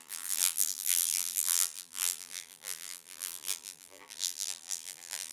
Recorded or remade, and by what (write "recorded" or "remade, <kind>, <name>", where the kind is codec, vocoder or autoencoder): remade, vocoder, BigVGAN v2